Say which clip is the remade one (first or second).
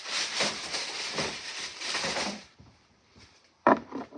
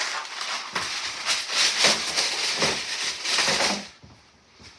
first